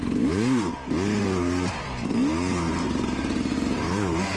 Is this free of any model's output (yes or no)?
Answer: no